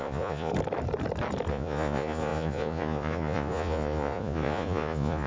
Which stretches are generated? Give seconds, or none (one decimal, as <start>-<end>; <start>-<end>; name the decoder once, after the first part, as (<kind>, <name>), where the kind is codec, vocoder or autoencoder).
0.0-0.5 (vocoder, Vocos); 1.5-5.3